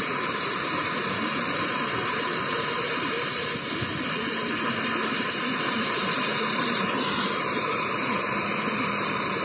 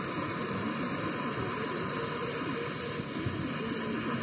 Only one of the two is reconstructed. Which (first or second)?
first